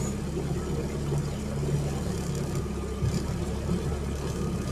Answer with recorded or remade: recorded